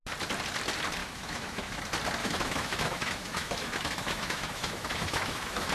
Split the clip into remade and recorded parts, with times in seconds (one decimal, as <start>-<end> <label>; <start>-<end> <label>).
0.0-1.0 recorded; 1.0-1.8 remade; 1.8-2.2 recorded; 2.2-5.7 remade